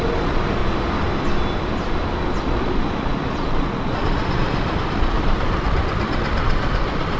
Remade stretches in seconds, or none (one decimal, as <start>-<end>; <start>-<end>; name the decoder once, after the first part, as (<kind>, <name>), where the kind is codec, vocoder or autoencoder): 0.0-0.6 (vocoder, Vocos); 2.4-7.2